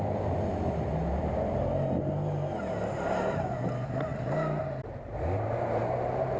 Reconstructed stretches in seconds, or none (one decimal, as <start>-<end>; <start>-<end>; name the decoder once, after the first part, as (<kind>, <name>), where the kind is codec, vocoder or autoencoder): none